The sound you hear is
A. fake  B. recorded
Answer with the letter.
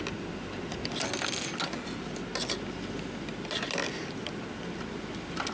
B